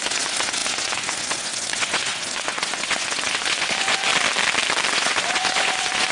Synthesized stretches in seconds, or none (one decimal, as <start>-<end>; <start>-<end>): 0.0-4.1; 4.9-6.1